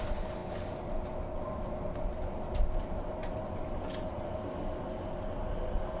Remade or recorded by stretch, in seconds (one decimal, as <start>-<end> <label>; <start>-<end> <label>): 0.0-6.0 recorded